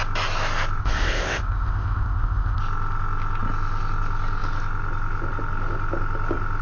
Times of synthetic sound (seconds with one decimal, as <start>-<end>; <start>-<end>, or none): 0.8-2.6